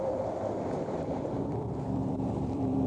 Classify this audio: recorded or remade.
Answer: remade